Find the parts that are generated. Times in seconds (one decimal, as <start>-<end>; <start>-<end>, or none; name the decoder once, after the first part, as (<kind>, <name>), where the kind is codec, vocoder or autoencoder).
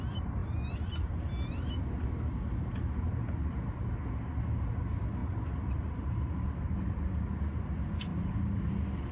5.2-6.2 (vocoder, BigVGAN v2); 8.1-8.7